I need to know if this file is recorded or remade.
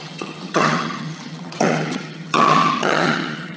remade